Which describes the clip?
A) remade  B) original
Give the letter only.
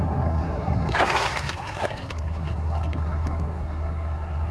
A